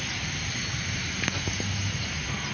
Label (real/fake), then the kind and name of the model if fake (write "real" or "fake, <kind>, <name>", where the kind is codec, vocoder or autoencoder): real